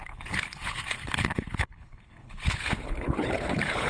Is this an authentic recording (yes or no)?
no